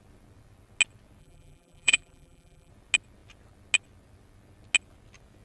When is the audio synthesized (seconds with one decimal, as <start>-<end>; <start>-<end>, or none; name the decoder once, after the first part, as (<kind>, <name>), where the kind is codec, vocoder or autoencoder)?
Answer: 1.2-2.7 (vocoder, BigVGAN v2)